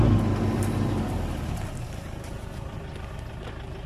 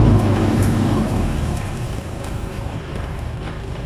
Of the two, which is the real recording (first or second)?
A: first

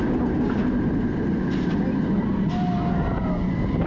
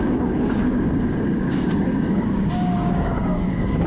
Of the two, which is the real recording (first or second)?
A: first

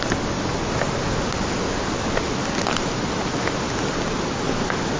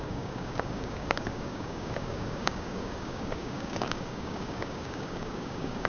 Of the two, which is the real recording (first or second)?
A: first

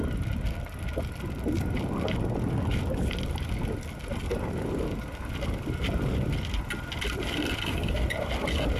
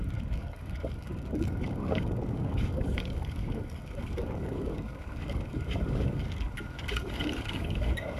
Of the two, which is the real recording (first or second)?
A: first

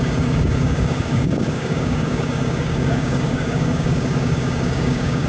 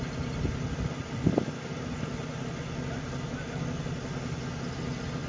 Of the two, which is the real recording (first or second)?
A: second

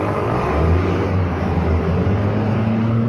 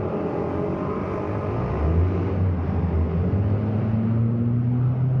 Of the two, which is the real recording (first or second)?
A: second